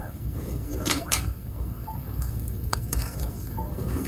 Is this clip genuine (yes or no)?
no